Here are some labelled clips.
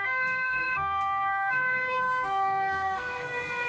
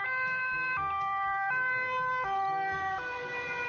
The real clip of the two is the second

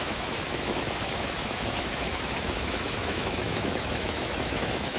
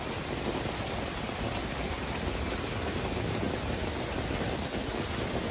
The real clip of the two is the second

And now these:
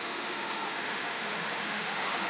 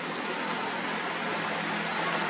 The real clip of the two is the second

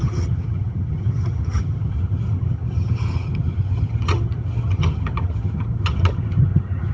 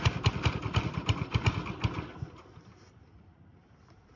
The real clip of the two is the second